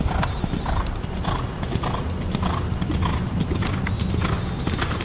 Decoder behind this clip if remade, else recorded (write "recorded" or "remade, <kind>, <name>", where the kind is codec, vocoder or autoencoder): recorded